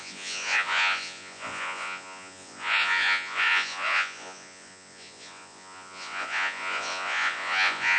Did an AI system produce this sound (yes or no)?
yes